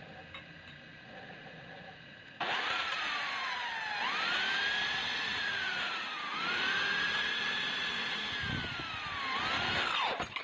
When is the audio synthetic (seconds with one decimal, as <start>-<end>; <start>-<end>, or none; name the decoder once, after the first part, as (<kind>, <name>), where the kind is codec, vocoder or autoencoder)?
0.9-3.7 (vocoder, Vocos); 5.0-8.2